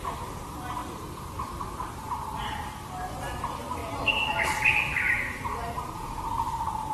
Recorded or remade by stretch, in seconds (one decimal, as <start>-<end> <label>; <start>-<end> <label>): 0.0-6.9 recorded